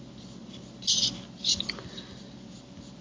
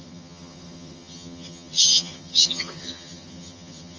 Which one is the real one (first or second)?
first